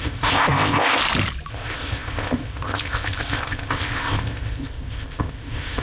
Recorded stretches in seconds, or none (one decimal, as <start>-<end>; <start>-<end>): 1.0-1.5